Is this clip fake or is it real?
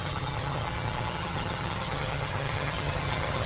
fake